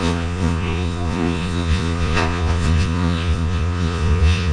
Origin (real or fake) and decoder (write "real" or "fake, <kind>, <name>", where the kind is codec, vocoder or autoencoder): fake, vocoder, Vocos